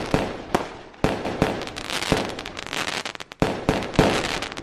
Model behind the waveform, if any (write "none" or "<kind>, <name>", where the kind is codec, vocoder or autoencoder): none